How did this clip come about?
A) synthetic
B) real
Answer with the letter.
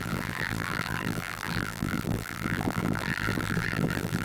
A